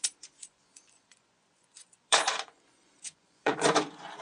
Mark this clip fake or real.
fake